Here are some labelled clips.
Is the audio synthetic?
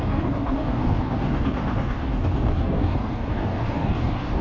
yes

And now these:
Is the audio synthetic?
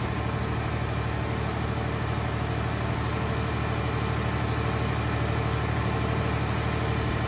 no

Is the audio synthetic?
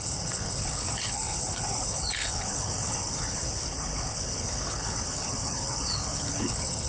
yes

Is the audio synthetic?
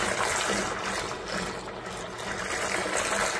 no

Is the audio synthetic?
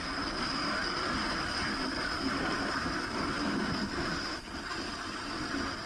no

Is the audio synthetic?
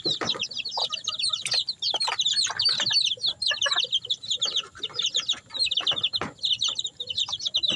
no